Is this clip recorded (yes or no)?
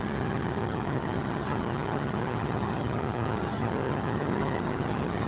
no